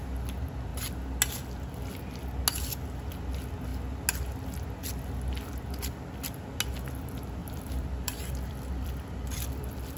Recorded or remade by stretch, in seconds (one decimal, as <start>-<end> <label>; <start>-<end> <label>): 0.0-7.4 recorded; 7.4-10.0 remade